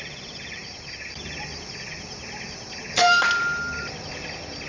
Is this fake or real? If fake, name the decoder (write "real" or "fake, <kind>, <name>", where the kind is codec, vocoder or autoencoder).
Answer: fake, vocoder, BigVGAN v2